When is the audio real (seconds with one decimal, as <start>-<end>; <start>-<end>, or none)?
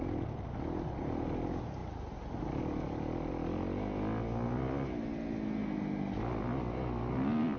0.0-7.6